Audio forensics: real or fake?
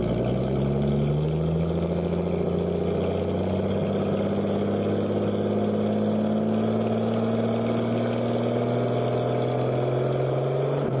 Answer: real